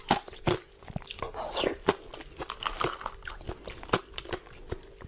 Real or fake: real